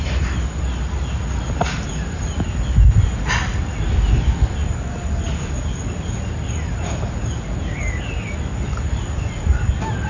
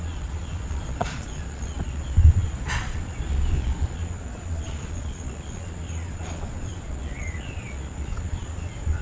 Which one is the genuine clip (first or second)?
first